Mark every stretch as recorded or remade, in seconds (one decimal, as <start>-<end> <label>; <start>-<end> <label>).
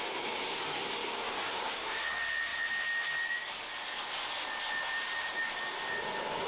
0.0-1.0 recorded; 1.0-2.0 remade; 2.0-6.5 recorded